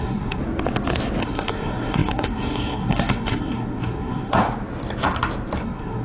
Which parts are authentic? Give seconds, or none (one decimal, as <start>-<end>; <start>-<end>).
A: 0.4-1.2; 4.4-5.6